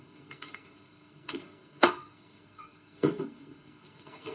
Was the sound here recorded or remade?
remade